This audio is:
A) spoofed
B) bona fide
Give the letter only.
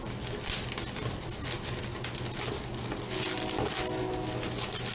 B